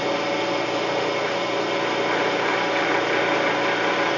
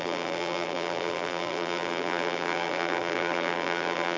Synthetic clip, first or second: second